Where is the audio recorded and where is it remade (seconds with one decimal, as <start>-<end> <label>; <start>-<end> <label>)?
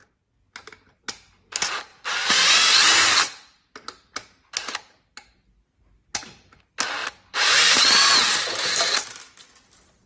0.0-10.1 recorded